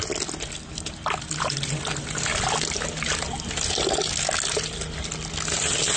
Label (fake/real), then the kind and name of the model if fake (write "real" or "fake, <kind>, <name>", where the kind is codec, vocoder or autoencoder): real